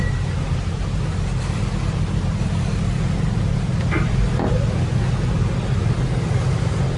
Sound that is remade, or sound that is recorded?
recorded